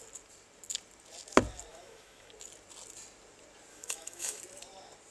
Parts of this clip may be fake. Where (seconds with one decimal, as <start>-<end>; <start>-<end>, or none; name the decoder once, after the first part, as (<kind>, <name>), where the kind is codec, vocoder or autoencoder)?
1.7-2.3 (autoencoder, DAC-VAE); 3.7-4.4